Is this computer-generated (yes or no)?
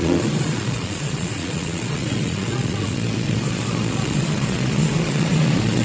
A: yes